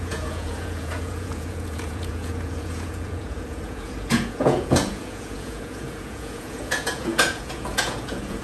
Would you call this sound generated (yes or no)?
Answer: yes